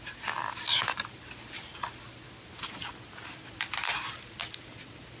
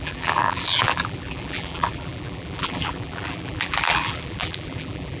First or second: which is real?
first